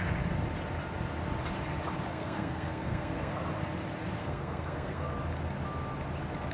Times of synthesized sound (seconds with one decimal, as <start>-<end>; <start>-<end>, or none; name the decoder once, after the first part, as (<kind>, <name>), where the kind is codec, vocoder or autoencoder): 2.1-3.3 (codec, SNAC); 4.2-5.1